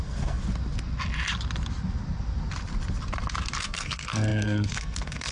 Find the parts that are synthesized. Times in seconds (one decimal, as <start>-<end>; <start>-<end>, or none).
0.0-0.4; 3.6-5.3